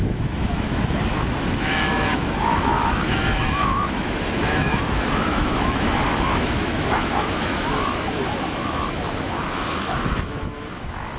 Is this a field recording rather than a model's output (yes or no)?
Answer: no